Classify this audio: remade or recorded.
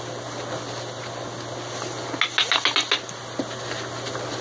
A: recorded